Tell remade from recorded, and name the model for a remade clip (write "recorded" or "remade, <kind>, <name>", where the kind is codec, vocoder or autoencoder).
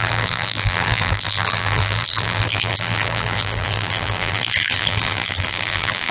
remade, vocoder, BigVGAN v2